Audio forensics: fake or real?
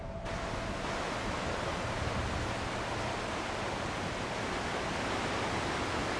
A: real